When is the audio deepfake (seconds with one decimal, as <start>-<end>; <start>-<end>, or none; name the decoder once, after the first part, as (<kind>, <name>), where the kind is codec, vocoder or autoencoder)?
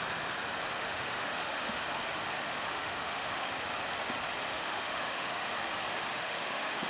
0.8-1.8 (autoencoder, DAC-VAE); 2.2-3.5; 4.5-5.5; 6.1-6.9